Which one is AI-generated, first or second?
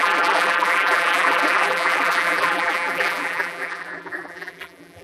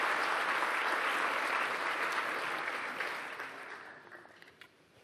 first